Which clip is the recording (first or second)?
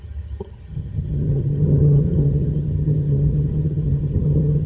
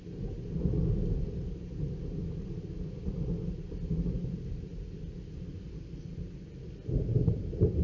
second